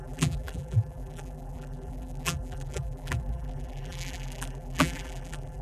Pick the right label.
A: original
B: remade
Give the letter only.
B